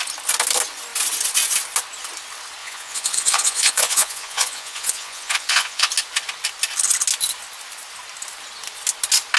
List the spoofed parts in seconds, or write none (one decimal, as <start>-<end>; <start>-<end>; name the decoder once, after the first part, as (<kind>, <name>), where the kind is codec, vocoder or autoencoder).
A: 2.6-5.9 (vocoder, Vocos)